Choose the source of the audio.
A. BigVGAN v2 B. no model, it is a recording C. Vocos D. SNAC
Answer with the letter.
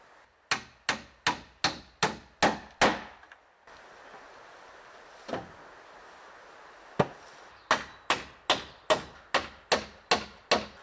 B